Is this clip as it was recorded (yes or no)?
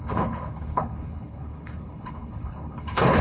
no